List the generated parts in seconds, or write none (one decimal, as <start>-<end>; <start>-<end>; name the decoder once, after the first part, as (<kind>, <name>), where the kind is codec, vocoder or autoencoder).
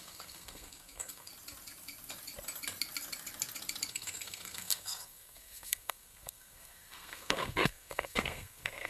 0.0-1.3 (codec, SNAC); 3.9-8.9